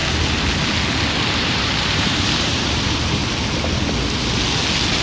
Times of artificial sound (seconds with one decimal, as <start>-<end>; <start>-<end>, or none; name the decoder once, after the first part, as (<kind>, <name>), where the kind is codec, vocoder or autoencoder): 1.4-3.2 (vocoder, BigVGAN v2)